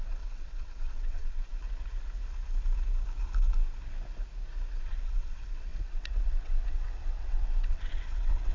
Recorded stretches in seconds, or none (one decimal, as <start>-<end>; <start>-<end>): 1.5-4.8